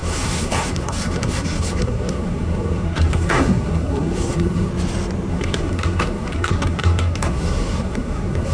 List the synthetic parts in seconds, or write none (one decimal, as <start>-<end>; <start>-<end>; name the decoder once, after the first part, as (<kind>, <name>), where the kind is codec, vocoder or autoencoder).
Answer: 0.0-4.7 (codec, SNAC); 5.3-8.5